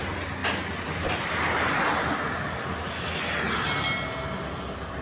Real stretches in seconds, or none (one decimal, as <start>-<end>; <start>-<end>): 0.0-0.4; 1.9-5.0